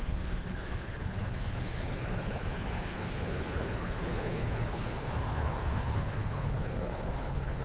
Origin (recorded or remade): remade